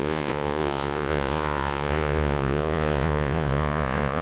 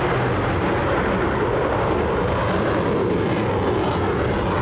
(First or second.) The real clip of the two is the second